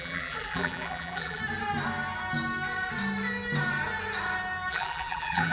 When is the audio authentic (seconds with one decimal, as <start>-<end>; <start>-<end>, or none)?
1.4-4.7